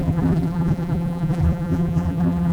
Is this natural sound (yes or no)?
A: no